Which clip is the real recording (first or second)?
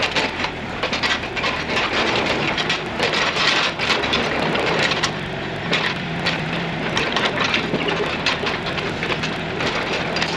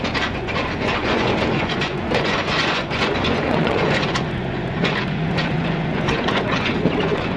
first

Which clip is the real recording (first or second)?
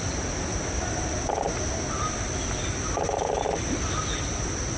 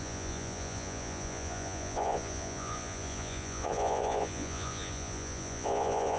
first